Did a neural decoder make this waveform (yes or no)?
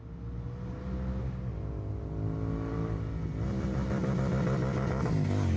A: no